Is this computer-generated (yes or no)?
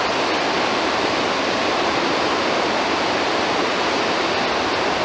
no